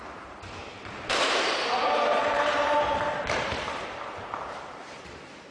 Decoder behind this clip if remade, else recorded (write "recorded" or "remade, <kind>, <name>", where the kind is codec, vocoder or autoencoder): remade, vocoder, BigVGAN v2